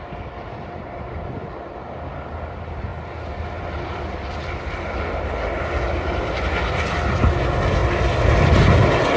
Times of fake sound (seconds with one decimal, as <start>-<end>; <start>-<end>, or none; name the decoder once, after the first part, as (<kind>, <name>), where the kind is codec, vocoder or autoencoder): none